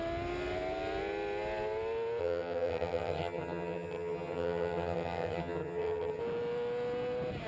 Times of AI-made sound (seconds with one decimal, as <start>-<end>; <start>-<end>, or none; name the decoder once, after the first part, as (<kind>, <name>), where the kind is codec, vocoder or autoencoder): 2.2-6.2 (vocoder, HiFi-GAN)